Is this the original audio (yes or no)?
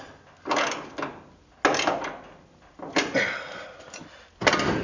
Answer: yes